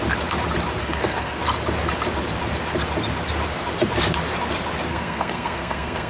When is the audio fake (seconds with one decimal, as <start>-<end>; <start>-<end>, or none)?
0.8-1.4; 4.9-6.1